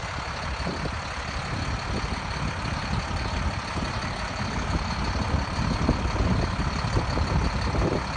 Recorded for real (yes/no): yes